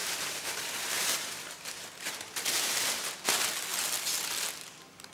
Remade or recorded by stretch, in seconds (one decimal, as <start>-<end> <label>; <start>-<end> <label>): 0.0-3.1 remade; 3.1-5.1 recorded